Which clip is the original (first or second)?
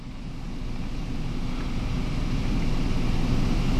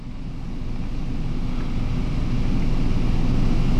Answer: second